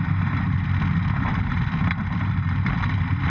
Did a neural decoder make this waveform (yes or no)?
yes